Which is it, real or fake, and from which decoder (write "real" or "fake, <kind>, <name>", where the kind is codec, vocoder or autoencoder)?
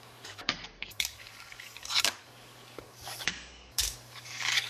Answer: fake, codec, DAC